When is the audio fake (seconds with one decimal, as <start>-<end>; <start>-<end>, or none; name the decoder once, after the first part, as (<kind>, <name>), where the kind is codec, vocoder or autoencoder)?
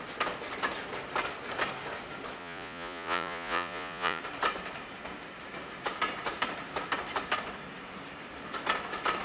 2.4-4.2 (vocoder, Vocos)